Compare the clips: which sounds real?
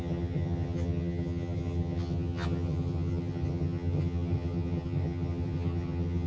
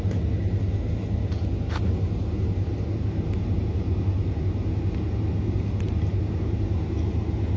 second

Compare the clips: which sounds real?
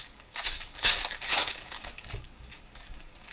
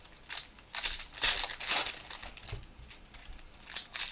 second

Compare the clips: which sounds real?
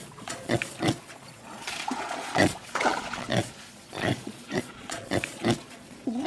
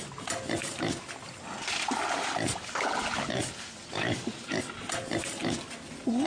second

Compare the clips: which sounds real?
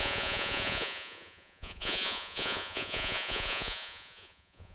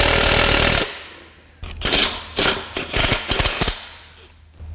second